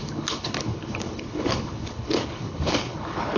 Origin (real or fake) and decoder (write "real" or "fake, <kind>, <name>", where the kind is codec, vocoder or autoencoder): fake, codec, HILCodec